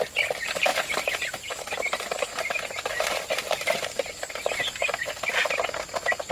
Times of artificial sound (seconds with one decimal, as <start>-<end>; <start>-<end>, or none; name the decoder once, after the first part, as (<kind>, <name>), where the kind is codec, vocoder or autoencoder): 0.0-0.7 (vocoder, BigVGAN v2); 4.5-5.4

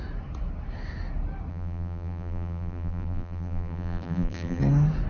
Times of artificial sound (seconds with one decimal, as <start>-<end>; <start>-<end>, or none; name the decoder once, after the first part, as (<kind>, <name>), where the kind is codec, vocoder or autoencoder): 1.5-4.6 (vocoder, BigVGAN v2)

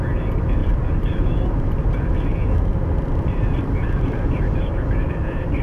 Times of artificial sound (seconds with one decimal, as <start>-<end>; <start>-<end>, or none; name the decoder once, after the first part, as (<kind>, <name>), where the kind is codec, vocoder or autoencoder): 0.6-2.1 (vocoder, BigVGAN v2); 2.7-4.0

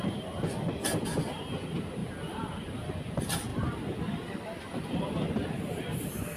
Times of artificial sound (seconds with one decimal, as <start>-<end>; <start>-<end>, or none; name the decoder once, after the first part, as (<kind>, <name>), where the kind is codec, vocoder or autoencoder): 2.0-2.7 (vocoder, BigVGAN v2)

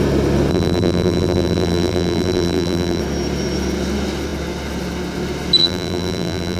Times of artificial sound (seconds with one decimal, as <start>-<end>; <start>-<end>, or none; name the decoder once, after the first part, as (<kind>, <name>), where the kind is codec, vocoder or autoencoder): 0.5-3.0 (vocoder, BigVGAN v2); 5.6-6.6

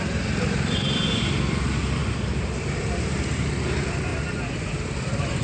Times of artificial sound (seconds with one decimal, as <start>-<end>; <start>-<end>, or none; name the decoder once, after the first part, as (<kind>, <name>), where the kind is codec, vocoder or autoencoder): 0.0-2.0 (vocoder, BigVGAN v2); 2.6-4.1; 4.6-5.4

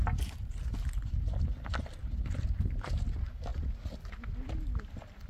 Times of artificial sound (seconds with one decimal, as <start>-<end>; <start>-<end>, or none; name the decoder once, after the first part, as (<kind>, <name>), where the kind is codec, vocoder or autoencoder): none

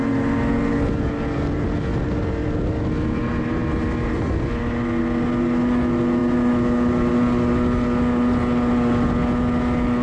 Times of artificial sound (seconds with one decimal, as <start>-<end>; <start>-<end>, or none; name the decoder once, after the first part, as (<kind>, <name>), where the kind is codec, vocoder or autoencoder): none